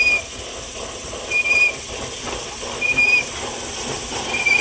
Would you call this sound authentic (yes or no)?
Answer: yes